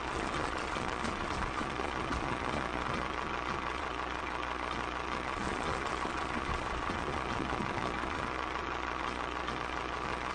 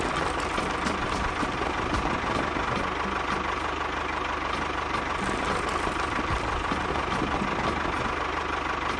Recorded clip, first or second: second